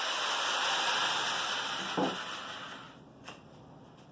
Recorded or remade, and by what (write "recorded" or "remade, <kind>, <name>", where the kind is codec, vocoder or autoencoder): recorded